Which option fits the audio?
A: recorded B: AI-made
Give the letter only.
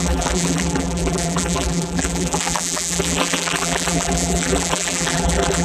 B